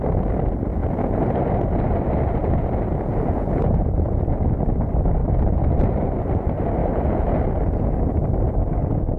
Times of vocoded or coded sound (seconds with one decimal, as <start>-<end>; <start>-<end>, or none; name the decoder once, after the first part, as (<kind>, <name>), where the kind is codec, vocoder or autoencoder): 2.4-4.3 (vocoder, Vocos); 6.8-7.4